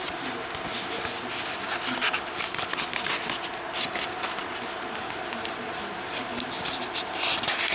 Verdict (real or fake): real